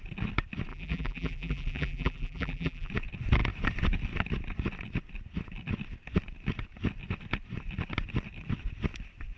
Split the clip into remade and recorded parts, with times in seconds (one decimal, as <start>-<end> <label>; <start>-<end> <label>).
0.0-0.7 recorded; 0.7-2.9 remade; 2.9-9.4 recorded